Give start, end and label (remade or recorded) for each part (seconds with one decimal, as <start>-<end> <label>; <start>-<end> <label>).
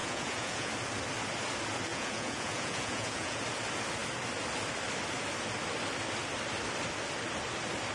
0.0-0.7 remade; 0.7-1.9 recorded; 1.9-3.4 remade; 3.4-7.9 recorded